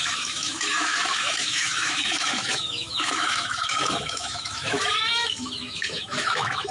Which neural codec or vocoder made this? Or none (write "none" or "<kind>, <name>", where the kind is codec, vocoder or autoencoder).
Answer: autoencoder, DAC-VAE